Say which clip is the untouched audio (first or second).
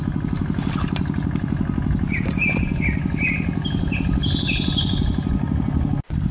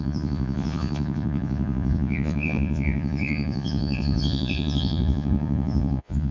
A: first